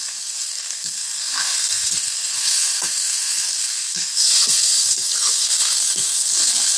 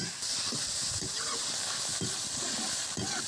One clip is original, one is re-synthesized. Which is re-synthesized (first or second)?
first